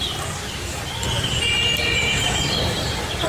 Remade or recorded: remade